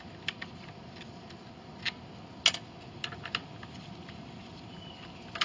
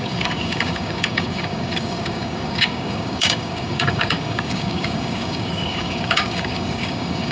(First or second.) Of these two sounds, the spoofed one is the second